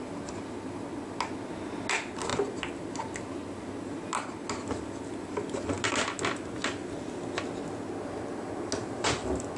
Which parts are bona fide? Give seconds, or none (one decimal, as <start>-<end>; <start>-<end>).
0.0-9.6